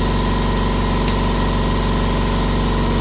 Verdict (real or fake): real